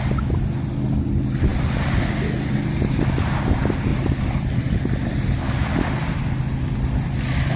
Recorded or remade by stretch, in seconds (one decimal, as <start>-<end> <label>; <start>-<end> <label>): 0.0-7.6 recorded